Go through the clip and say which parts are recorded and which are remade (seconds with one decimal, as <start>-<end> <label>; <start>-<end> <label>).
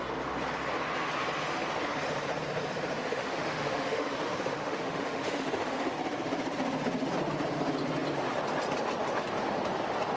0.0-3.0 recorded; 3.0-5.9 remade; 5.9-10.2 recorded